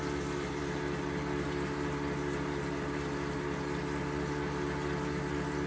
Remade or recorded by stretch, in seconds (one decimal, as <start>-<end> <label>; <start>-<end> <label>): 0.0-5.7 recorded